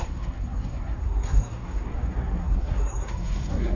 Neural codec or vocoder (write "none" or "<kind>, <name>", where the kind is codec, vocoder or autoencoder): codec, SNAC